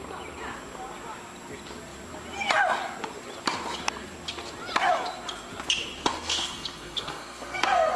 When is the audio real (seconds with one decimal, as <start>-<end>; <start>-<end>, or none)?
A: 0.0-6.0